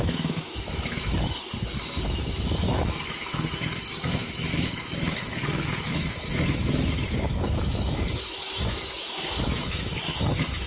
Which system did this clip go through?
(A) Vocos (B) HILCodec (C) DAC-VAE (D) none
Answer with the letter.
C